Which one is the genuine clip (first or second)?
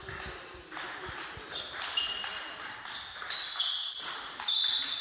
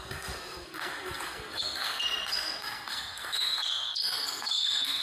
first